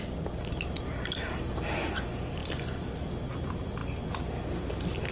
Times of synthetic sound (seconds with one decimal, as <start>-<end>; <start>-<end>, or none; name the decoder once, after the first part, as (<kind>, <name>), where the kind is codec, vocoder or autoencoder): none